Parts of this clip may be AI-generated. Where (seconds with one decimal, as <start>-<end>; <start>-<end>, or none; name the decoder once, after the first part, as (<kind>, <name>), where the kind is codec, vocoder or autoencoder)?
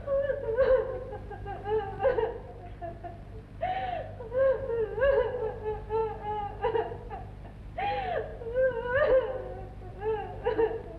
0.0-2.1 (vocoder, BigVGAN v2); 4.4-6.0; 7.6-11.0